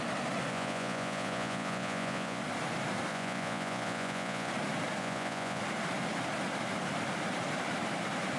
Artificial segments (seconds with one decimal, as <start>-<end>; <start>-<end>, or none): 0.5-2.4; 3.1-4.5; 5.0-5.6